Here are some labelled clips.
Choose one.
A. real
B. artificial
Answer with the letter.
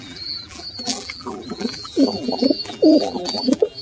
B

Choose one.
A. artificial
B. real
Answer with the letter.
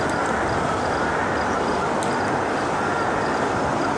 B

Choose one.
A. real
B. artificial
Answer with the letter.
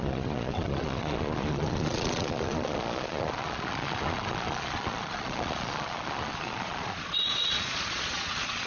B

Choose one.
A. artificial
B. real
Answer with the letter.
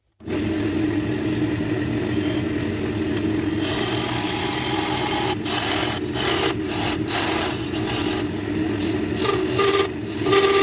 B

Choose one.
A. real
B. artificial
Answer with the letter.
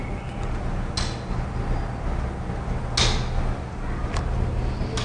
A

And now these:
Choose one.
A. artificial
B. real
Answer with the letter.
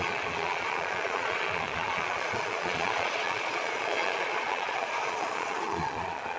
A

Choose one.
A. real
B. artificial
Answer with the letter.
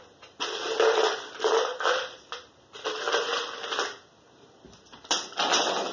A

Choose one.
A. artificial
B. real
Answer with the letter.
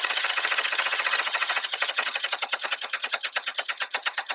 A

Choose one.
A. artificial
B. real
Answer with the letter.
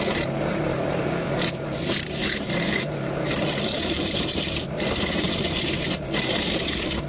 A